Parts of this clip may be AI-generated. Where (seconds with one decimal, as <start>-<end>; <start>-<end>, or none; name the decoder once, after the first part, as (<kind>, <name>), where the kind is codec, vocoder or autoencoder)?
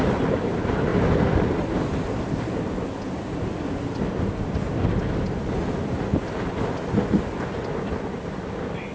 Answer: none